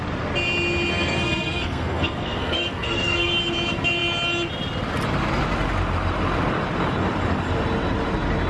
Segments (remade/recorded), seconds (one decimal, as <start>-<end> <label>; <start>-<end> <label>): 0.0-0.9 recorded; 0.9-3.3 remade; 3.3-8.5 recorded